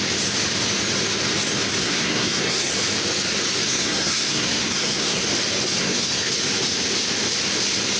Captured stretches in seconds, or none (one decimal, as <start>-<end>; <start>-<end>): 0.0-1.8; 2.7-3.7; 5.2-5.8; 6.3-8.0